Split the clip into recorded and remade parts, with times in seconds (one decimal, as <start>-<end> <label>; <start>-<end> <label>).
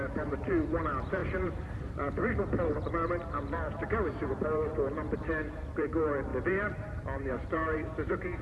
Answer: 0.0-8.4 remade